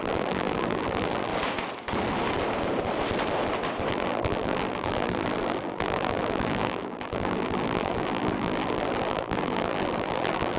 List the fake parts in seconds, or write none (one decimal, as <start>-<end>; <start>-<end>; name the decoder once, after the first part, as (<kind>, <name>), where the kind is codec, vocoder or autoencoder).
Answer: 0.0-1.3 (vocoder, BigVGAN v2); 3.9-10.6

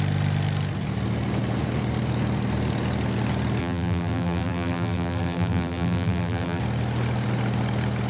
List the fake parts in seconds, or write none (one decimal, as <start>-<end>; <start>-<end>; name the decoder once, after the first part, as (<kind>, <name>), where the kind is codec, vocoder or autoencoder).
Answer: 3.6-6.6 (vocoder, BigVGAN v2)